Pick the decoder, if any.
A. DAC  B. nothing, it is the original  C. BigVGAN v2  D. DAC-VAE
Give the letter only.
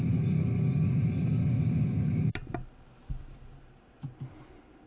B